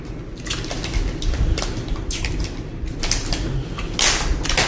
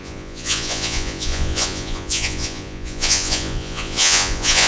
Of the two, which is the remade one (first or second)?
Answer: second